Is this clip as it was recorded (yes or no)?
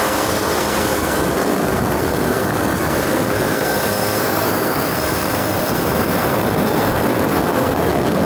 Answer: no